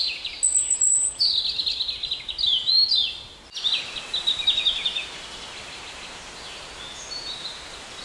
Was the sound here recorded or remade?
recorded